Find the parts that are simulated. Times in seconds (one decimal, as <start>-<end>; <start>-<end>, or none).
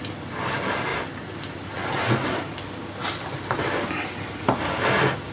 none